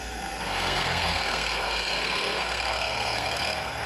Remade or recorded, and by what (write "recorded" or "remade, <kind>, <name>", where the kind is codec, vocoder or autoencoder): remade, codec, SNAC